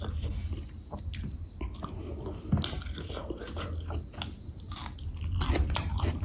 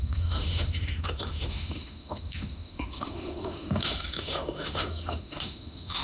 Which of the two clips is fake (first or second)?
second